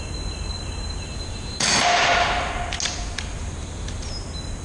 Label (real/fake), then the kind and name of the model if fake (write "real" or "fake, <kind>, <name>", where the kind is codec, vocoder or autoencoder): real